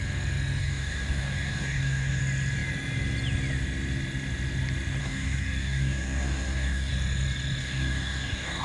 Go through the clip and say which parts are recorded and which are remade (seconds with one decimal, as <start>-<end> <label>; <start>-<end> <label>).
0.0-0.6 recorded; 0.6-2.2 remade; 2.2-5.0 recorded; 5.0-6.9 remade; 6.9-7.6 recorded; 7.6-8.6 remade